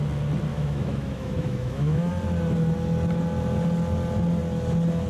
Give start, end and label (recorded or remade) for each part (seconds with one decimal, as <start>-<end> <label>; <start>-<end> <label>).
0.0-0.5 recorded; 0.5-2.1 remade; 2.1-5.1 recorded